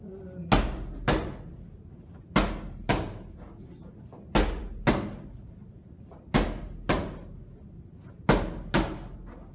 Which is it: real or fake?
real